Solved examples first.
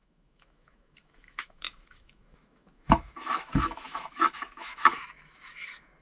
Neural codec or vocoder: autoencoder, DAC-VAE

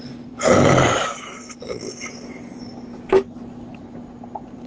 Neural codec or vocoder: none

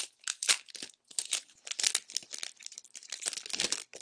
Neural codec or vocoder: none